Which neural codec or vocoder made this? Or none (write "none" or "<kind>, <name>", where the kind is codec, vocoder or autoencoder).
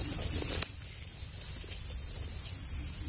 none